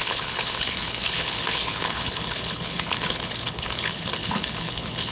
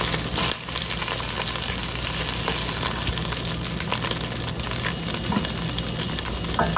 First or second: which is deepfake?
first